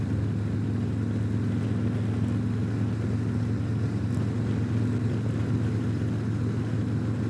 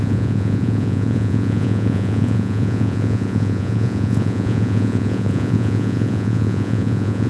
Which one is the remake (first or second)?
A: second